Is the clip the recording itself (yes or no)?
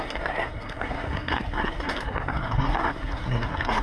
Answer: no